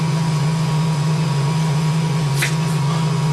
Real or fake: fake